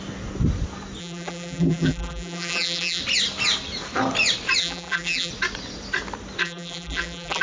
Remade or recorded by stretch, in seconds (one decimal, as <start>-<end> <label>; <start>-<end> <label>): 0.0-1.0 recorded; 1.0-3.0 remade; 3.0-4.6 recorded; 4.6-5.3 remade; 5.3-6.4 recorded; 6.4-7.4 remade